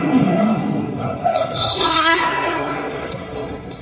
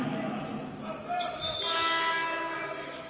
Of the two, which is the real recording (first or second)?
second